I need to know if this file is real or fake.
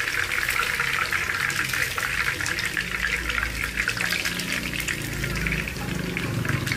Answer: real